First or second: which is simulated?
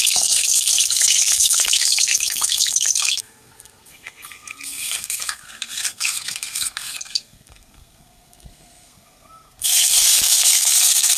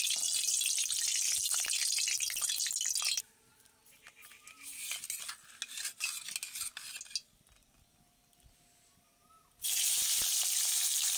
first